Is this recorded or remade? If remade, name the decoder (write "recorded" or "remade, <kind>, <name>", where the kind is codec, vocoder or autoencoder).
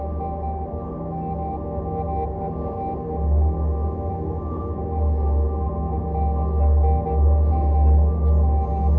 recorded